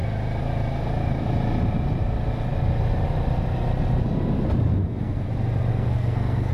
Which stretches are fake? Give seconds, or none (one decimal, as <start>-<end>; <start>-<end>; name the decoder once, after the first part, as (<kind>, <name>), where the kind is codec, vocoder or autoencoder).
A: 4.7-5.3 (codec, SNAC); 5.7-6.5